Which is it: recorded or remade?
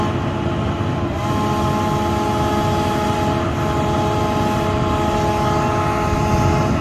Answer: recorded